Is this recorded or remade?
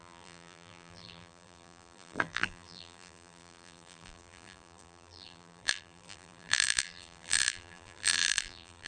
remade